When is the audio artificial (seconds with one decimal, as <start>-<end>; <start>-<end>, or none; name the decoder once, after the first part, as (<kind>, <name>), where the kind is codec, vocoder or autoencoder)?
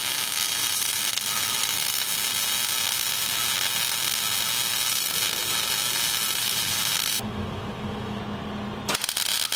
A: 0.9-2.1 (autoencoder, DAC-VAE); 6.4-8.2